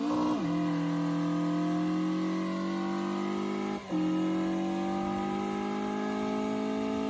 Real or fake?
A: real